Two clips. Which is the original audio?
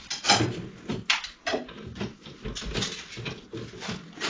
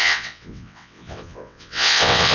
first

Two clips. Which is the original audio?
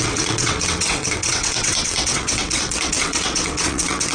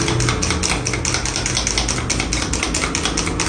second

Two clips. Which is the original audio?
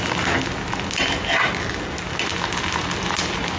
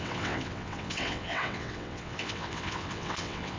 first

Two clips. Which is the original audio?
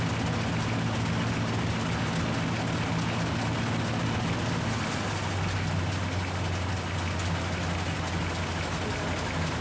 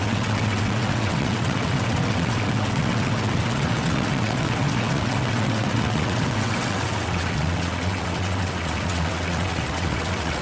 first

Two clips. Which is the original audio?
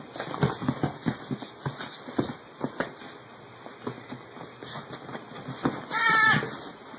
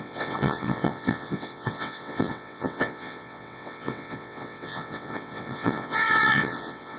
first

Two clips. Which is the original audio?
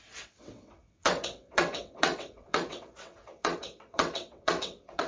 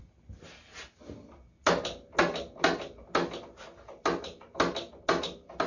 second